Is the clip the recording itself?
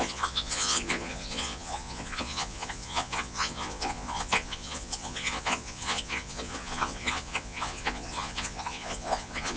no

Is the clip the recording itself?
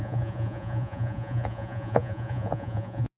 no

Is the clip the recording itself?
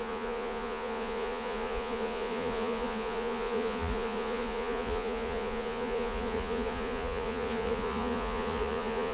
no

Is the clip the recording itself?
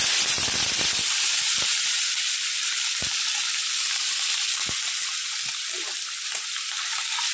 yes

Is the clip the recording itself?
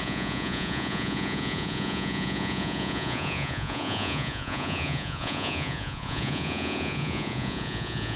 no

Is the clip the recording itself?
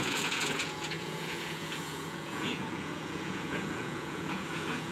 no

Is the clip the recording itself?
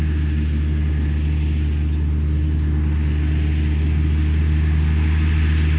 yes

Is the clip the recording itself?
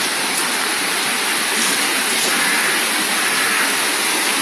yes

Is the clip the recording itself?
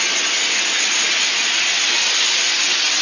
yes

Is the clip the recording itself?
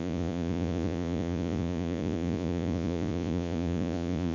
no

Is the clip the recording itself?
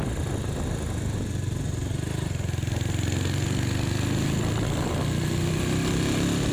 yes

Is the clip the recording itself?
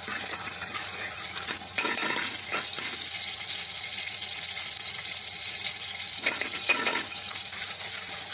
no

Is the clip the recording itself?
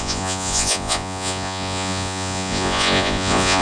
no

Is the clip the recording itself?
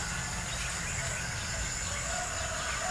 yes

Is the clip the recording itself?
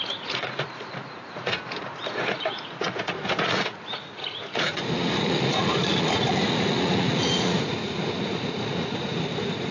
no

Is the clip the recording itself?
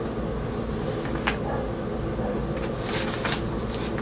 yes